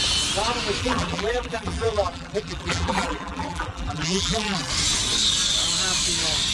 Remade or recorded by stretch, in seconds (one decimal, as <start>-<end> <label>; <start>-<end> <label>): 0.0-0.8 recorded; 0.8-4.7 remade; 4.7-6.5 recorded